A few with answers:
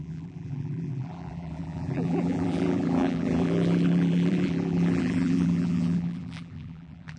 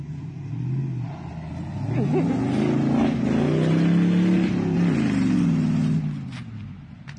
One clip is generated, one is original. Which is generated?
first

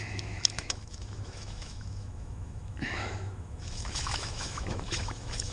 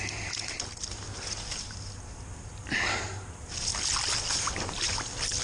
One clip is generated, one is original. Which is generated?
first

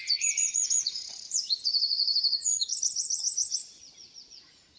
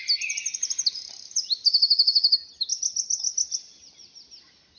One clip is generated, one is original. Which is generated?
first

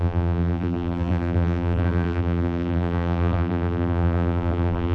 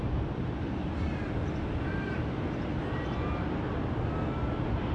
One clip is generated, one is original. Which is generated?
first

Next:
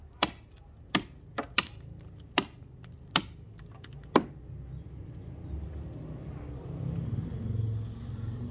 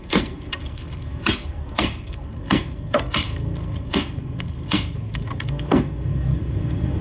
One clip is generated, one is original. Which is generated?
second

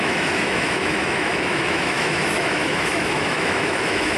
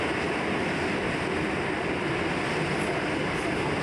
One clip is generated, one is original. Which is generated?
first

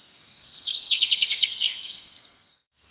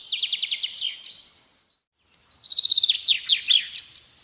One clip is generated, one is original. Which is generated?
first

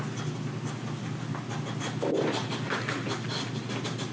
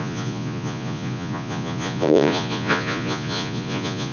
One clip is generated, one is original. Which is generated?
second